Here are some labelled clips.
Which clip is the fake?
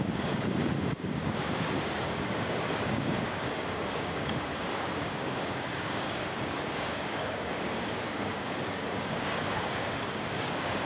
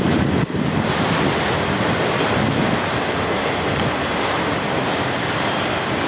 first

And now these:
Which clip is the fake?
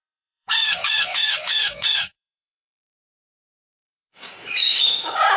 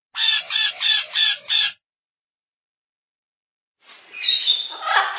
first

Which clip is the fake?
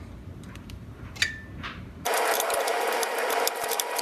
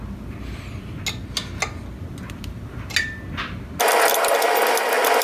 first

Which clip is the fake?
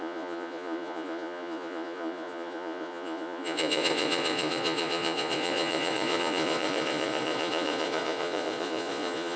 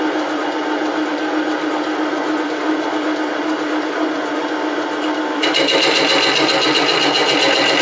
first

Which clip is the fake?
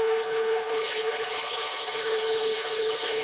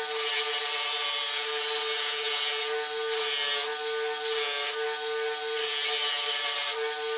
first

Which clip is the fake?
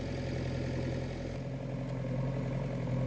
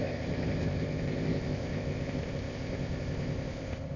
second